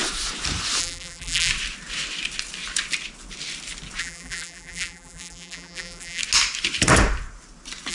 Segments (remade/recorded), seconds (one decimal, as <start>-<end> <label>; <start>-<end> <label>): 0.0-0.8 recorded; 0.8-1.5 remade; 1.5-4.0 recorded; 4.0-6.2 remade; 6.2-7.9 recorded